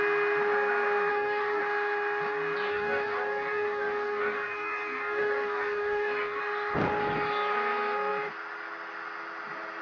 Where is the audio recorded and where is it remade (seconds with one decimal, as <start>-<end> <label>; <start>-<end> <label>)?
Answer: 0.0-1.1 recorded; 1.1-1.6 remade; 1.6-2.7 recorded; 2.7-6.4 remade; 6.4-9.8 recorded